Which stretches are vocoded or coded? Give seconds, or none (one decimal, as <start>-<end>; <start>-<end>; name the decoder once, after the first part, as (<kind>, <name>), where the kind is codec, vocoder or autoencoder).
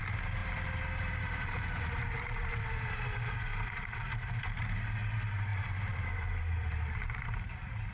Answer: 0.0-7.9 (vocoder, BigVGAN v2)